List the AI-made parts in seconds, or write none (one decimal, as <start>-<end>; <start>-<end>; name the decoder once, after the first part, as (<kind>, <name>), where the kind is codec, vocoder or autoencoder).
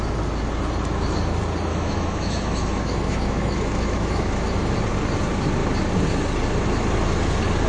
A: 1.7-4.7 (autoencoder, DAC-VAE)